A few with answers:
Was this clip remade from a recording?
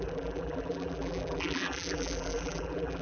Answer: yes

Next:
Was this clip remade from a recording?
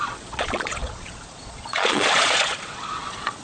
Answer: yes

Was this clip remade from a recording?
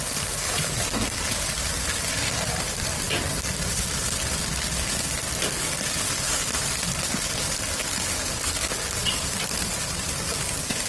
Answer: yes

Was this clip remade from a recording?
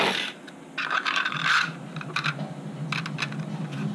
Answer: no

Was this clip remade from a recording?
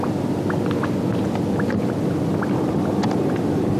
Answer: no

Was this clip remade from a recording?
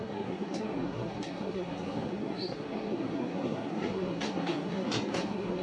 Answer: yes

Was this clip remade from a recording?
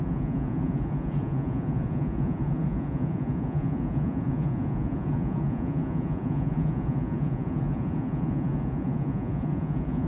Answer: yes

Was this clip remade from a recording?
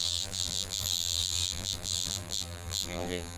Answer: yes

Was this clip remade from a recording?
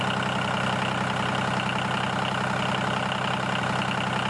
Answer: no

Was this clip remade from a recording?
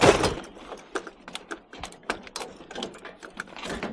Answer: no